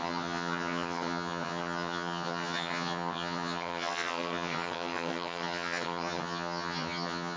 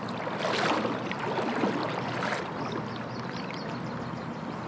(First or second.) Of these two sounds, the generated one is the first